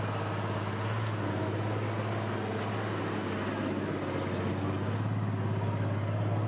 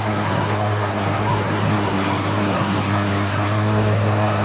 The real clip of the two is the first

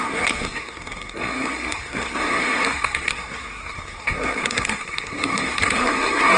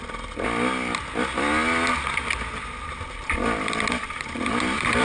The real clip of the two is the second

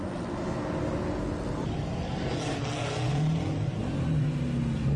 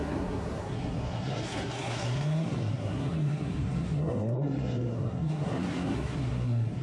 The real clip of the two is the first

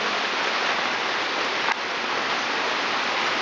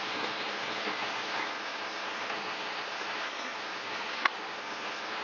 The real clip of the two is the first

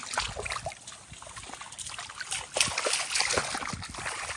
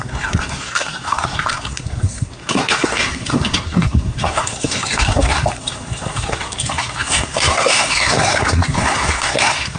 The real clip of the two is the first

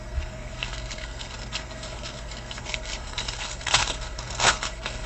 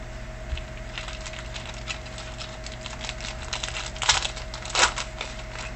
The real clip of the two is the second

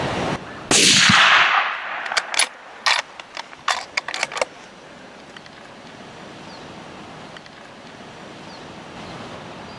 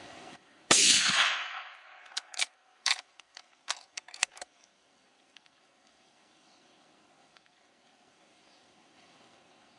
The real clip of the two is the first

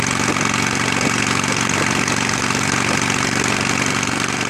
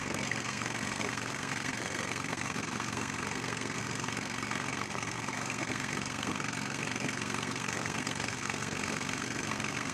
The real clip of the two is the first